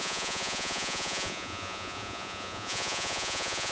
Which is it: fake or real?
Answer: fake